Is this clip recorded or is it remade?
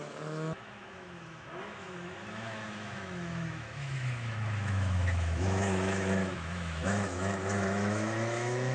remade